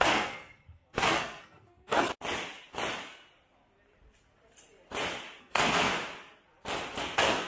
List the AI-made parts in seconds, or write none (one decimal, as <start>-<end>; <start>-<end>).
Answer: 0.0-2.1; 5.4-5.9; 7.0-7.5